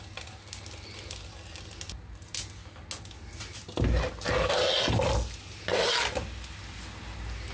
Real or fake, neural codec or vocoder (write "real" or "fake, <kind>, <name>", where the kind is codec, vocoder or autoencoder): real